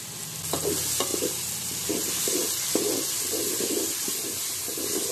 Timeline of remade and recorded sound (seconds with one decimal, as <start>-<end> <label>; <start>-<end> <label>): 0.0-5.1 recorded